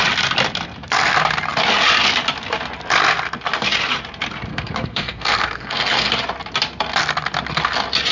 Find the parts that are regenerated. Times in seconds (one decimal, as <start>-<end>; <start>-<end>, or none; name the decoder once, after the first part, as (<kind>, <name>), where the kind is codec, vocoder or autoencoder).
4.5-6.1 (codec, SNAC)